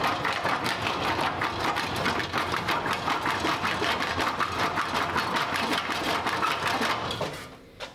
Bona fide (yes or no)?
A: yes